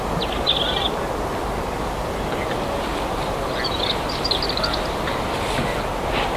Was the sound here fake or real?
real